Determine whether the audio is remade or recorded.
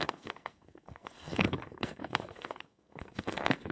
remade